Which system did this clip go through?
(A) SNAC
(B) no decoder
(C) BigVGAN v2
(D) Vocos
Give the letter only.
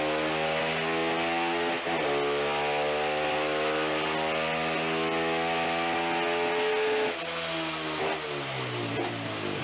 B